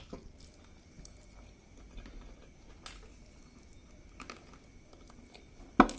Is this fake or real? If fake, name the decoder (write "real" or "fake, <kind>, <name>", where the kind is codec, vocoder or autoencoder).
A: real